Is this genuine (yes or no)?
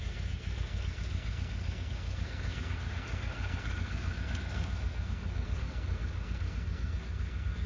no